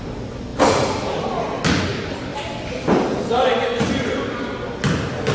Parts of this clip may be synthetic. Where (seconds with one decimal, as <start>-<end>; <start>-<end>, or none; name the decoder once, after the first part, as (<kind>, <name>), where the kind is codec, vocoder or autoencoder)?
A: 2.3-3.8 (vocoder, BigVGAN v2)

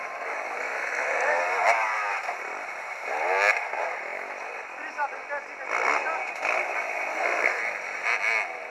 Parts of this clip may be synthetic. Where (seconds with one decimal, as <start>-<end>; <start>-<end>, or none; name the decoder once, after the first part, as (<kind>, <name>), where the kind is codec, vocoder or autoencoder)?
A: 7.1-7.6 (codec, SNAC)

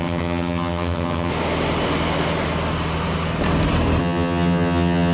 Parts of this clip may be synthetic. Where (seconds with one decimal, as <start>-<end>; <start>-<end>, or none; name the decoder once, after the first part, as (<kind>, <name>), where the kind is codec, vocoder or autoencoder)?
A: 0.0-1.3 (vocoder, HiFi-GAN); 4.0-5.1

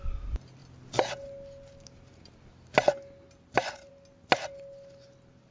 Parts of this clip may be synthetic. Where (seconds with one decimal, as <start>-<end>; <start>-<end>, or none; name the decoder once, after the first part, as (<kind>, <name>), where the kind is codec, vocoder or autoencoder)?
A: none

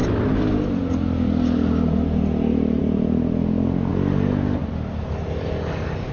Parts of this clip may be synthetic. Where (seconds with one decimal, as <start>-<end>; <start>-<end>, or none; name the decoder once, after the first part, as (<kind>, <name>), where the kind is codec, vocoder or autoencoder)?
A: none

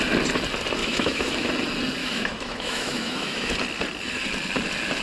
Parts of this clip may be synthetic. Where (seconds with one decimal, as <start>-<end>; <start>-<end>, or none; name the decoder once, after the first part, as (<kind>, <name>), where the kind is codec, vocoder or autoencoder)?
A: 0.8-1.5 (autoencoder, DAC-VAE); 2.0-3.5

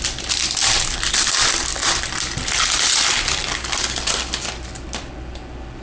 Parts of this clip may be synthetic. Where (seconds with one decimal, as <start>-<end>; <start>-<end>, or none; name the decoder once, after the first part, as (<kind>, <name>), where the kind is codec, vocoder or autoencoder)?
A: none